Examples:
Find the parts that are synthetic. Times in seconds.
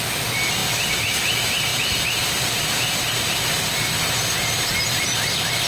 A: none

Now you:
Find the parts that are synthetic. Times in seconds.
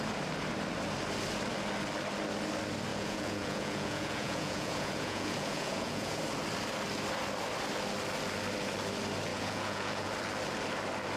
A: 2.9-6.2 (vocoder, Vocos); 9.3-10.1